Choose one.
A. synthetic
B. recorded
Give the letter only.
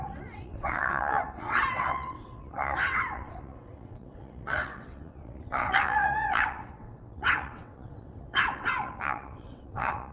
A